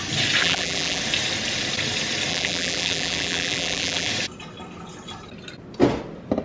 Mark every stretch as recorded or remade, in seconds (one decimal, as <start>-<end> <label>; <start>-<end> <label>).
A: 0.0-0.4 recorded; 0.4-1.0 remade; 1.0-2.3 recorded; 2.3-4.1 remade; 4.1-6.4 recorded